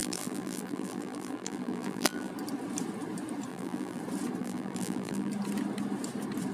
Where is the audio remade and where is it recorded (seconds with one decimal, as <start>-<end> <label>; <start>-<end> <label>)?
0.0-2.3 remade; 2.3-3.5 recorded; 3.5-4.0 remade; 4.0-4.4 recorded; 4.4-5.3 remade; 5.3-6.5 recorded